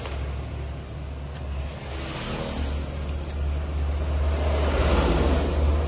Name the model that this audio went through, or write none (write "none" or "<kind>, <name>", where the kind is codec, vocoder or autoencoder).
none